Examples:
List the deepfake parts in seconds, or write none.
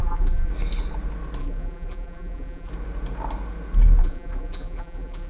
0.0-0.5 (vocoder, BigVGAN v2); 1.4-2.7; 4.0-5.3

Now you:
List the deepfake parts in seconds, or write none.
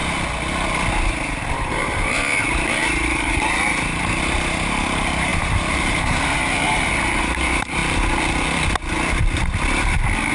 1.1-7.8 (vocoder, BigVGAN v2)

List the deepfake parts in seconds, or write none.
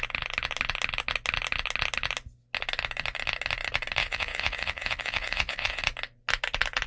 4.0-5.8 (vocoder, Vocos)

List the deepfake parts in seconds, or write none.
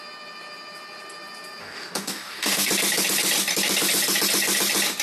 1.6-2.7 (codec, DAC)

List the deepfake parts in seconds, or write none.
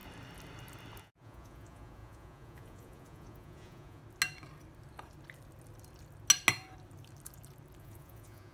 1.0-4.0 (vocoder, Vocos); 7.8-8.5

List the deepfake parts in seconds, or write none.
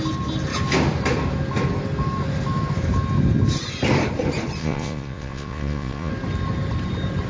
4.6-6.1 (vocoder, Vocos)